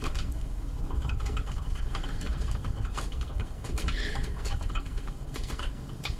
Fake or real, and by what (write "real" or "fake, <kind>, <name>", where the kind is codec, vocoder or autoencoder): fake, codec, SNAC